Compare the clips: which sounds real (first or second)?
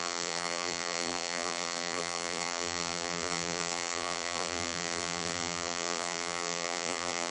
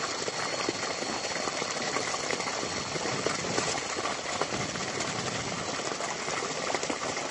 second